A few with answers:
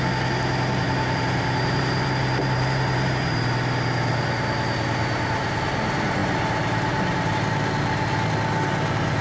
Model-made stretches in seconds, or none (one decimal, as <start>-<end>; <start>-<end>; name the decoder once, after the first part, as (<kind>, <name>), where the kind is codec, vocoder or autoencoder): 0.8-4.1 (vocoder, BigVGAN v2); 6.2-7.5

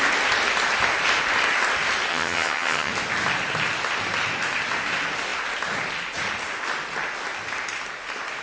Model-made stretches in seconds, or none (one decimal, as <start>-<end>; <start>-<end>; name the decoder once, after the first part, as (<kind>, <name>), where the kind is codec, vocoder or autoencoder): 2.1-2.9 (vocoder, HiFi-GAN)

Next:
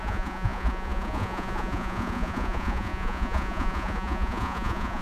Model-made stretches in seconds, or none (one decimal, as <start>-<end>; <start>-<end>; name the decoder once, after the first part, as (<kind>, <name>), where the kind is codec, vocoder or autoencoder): 0.0-5.0 (vocoder, Vocos)

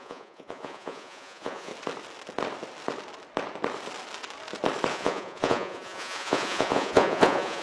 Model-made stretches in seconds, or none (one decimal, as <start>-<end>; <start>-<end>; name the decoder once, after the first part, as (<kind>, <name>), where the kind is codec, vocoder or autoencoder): 0.0-1.7 (vocoder, Vocos); 4.9-7.6